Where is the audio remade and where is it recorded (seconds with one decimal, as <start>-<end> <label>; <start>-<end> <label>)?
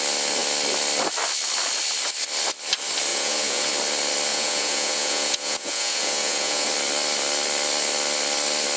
0.0-3.1 recorded; 3.1-3.7 remade; 3.7-4.3 recorded; 4.3-6.7 remade; 6.7-8.8 recorded